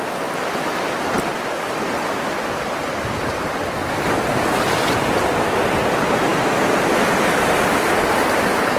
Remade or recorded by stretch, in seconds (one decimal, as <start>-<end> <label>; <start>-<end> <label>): 0.0-8.8 recorded